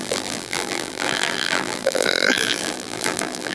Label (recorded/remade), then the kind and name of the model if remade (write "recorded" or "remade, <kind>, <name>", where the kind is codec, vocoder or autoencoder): remade, vocoder, BigVGAN v2